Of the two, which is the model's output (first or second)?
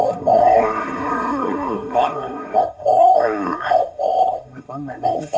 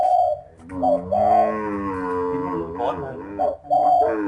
first